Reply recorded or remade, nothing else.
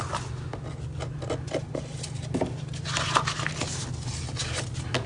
recorded